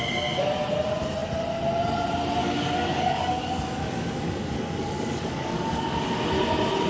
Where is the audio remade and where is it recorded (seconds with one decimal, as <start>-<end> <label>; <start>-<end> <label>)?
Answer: 0.0-2.4 recorded; 2.4-6.3 remade; 6.3-6.9 recorded